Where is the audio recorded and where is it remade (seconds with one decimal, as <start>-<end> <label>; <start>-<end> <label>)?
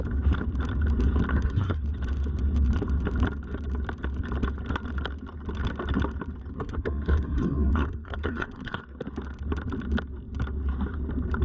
0.0-1.3 recorded; 1.3-1.8 remade; 1.8-6.5 recorded; 6.5-8.8 remade; 8.8-11.4 recorded